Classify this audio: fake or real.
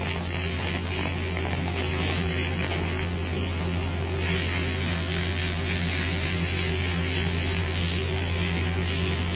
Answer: fake